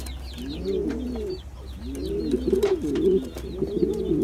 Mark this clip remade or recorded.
recorded